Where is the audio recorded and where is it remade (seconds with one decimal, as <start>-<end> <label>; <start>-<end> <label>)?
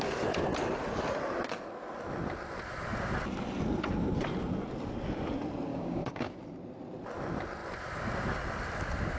0.0-5.7 recorded; 5.7-6.4 remade; 6.4-9.2 recorded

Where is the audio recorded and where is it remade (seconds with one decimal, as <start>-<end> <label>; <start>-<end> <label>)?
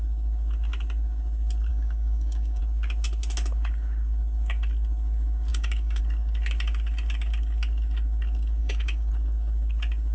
0.0-1.7 recorded; 1.7-2.6 remade; 2.6-5.5 recorded; 5.5-6.0 remade; 6.0-8.6 recorded; 8.6-9.1 remade; 9.1-10.1 recorded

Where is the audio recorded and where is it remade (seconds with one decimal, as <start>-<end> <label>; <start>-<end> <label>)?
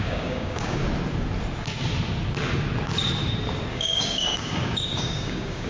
0.0-0.8 remade; 0.8-3.7 recorded; 3.7-5.7 remade